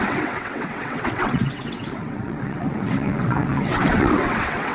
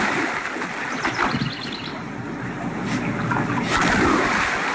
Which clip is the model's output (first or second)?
first